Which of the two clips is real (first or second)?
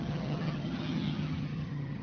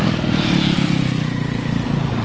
second